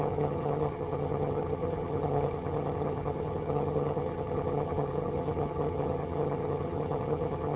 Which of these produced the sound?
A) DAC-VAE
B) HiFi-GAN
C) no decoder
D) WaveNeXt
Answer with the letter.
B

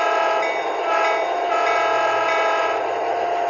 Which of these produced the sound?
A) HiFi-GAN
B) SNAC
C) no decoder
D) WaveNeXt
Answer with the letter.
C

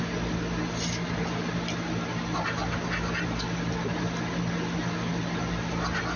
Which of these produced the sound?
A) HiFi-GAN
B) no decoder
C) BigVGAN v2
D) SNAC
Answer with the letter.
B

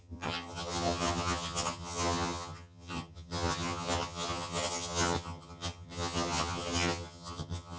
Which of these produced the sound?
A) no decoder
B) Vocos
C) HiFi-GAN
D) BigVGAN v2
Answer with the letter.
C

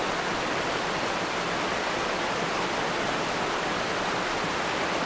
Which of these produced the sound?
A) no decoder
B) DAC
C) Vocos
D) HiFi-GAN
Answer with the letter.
A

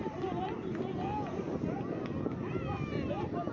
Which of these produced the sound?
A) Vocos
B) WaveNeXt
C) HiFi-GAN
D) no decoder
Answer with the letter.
D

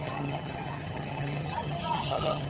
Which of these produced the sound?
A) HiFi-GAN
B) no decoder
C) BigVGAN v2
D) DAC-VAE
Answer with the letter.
A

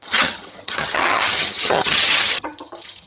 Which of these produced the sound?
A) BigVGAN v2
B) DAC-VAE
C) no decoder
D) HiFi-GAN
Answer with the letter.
D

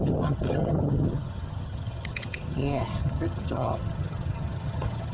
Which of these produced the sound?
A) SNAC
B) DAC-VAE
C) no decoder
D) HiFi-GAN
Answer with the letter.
D